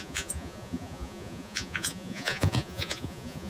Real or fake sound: fake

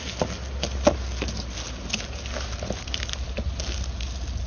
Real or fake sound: real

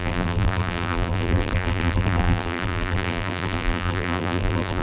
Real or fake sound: fake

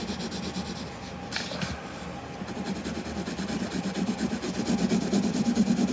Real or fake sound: real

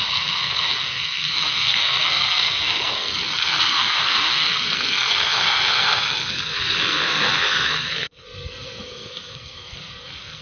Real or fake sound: fake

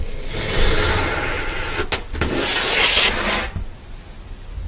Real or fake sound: real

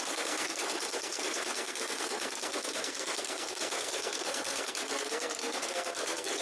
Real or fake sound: fake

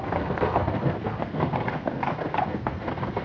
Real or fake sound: fake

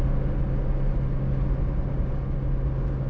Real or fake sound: real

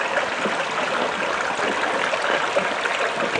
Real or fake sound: real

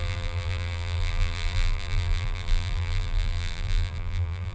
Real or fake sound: fake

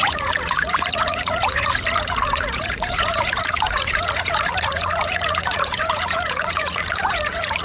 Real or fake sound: fake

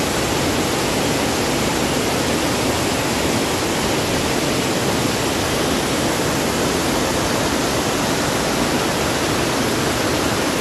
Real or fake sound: real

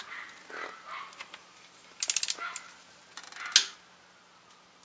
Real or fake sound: real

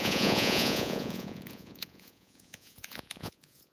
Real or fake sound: fake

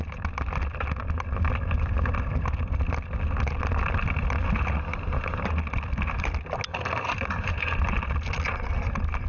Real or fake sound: real